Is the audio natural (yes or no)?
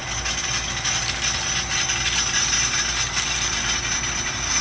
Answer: yes